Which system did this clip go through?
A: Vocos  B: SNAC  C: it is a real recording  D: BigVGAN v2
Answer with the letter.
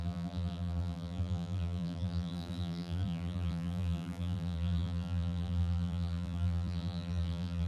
D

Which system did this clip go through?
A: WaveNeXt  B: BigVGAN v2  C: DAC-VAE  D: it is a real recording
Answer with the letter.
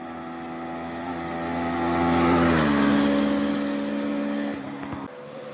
D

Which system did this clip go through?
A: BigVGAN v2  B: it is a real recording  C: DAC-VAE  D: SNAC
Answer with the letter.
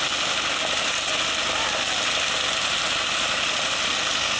B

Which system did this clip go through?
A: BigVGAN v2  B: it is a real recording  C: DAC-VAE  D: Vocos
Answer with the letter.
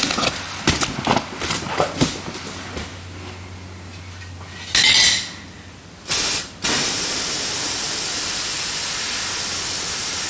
B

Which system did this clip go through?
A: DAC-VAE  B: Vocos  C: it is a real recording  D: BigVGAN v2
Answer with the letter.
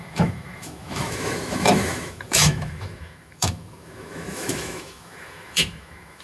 A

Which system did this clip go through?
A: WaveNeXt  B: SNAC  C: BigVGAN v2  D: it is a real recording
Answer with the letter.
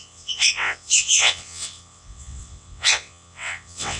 A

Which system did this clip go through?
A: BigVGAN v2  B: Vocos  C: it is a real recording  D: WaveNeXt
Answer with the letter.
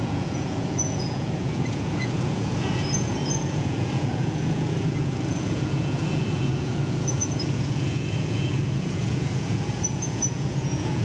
B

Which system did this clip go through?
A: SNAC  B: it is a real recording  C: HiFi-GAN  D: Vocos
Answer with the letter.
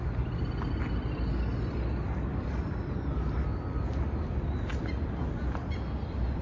B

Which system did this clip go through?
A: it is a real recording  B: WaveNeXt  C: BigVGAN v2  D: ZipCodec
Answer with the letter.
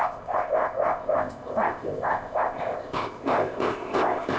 D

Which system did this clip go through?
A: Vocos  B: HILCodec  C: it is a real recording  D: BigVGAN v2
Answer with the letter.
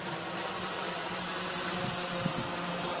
C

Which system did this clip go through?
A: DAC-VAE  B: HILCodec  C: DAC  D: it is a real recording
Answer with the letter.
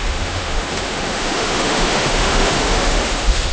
A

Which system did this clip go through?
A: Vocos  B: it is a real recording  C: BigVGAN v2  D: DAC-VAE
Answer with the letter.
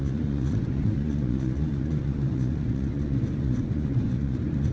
A